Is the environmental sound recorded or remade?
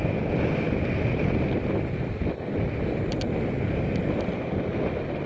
recorded